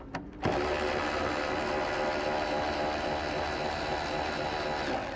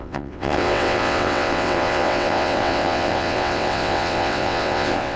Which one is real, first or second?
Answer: first